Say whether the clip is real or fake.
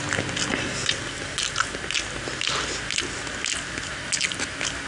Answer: real